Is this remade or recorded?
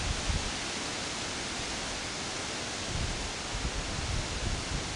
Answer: recorded